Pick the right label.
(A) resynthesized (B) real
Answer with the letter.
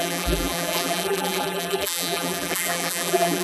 A